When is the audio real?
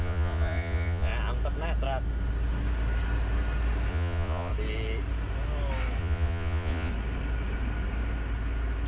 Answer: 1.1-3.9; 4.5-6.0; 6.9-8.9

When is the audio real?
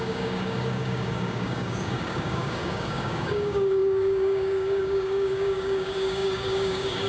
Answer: none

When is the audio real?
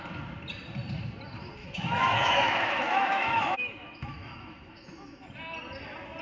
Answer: 0.0-1.6; 5.3-6.2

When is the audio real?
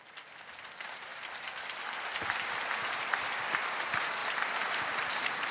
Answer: 0.0-1.1; 2.6-4.2; 4.8-5.5